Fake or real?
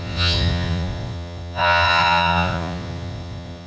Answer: fake